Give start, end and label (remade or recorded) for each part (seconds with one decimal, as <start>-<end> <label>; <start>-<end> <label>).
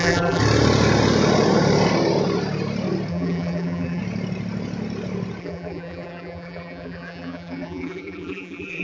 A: 0.0-0.4 remade; 0.4-3.1 recorded; 3.1-4.0 remade; 4.0-5.4 recorded; 5.4-8.8 remade